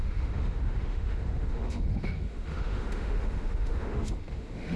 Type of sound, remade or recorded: remade